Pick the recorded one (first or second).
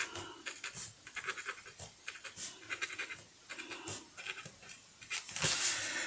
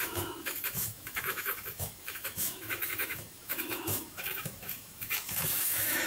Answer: first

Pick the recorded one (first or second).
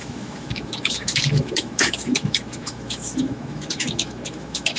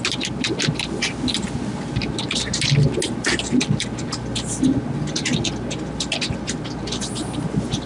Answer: second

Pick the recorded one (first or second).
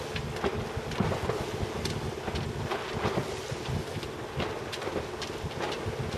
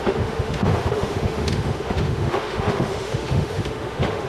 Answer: first